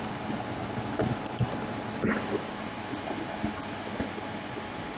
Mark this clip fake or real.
real